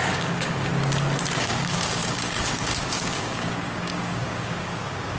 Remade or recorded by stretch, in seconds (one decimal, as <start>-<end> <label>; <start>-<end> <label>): 0.0-0.7 remade; 0.7-1.4 recorded; 1.4-5.2 remade